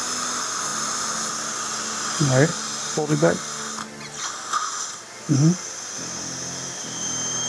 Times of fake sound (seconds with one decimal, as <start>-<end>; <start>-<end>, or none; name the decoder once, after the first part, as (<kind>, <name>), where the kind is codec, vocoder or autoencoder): none